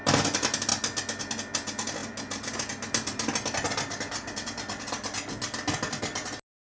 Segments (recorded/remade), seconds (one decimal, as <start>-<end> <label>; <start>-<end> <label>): 0.0-6.7 recorded